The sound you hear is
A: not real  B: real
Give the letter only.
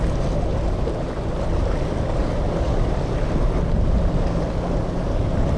B